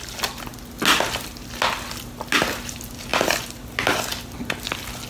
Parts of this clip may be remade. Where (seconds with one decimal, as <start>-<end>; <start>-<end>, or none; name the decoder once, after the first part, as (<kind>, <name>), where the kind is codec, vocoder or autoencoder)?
none